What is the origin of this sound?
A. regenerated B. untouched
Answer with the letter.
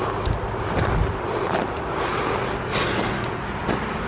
B